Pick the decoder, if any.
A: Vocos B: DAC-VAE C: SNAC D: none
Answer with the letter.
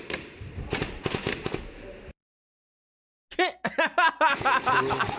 D